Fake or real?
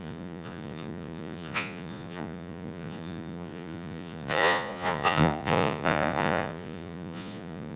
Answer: fake